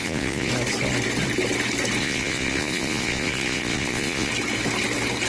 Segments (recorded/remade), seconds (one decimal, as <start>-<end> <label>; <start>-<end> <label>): 0.0-0.5 remade; 0.5-2.0 recorded; 2.0-4.3 remade; 4.3-5.3 recorded